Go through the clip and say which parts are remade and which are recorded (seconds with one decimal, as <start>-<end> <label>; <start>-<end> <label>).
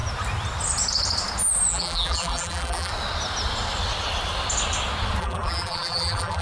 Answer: 0.0-1.7 recorded; 1.7-2.9 remade; 2.9-5.2 recorded; 5.2-6.4 remade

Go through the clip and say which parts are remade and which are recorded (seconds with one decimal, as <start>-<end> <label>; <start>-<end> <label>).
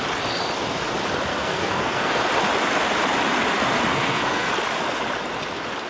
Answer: 0.0-1.3 recorded; 1.3-2.3 remade; 2.3-3.9 recorded; 3.9-4.5 remade; 4.5-5.9 recorded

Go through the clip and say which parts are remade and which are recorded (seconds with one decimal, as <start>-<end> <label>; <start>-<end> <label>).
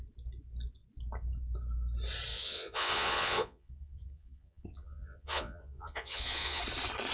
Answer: 0.0-2.3 recorded; 2.3-6.6 remade; 6.6-7.1 recorded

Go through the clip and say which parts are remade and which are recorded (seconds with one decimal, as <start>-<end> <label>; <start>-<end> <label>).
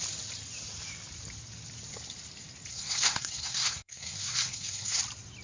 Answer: 0.0-2.7 recorded; 2.7-5.0 remade; 5.0-5.4 recorded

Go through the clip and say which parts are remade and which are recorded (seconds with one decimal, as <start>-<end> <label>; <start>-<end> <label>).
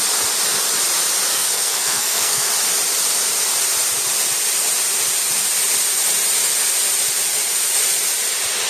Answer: 0.0-1.3 recorded; 1.3-2.5 remade; 2.5-8.7 recorded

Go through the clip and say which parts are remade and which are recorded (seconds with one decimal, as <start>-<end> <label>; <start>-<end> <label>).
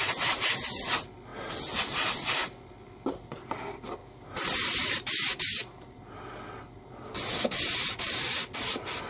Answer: 0.0-4.0 recorded; 4.0-9.1 remade